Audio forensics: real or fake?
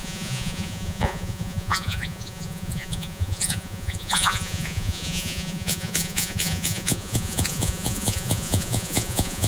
fake